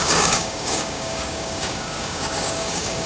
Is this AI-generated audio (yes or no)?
yes